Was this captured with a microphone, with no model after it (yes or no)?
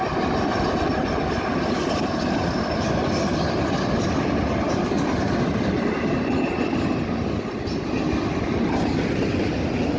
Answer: yes